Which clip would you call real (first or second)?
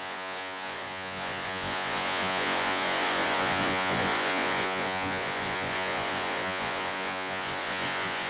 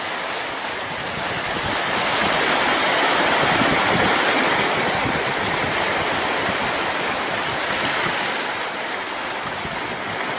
second